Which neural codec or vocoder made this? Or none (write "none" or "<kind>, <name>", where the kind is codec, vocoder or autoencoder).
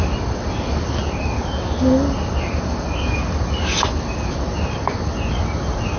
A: none